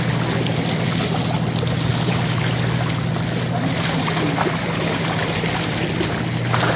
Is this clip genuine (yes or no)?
yes